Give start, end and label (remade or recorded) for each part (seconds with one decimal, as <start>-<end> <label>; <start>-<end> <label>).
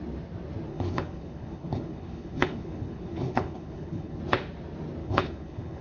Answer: 0.0-0.7 recorded; 0.7-4.2 remade; 4.2-5.0 recorded; 5.0-5.8 remade